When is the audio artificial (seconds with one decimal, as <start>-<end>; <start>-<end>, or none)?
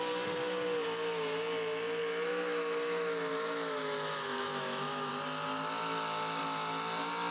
2.0-5.1